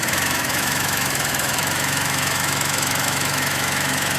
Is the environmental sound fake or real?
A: fake